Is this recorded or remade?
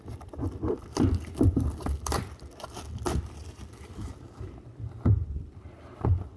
remade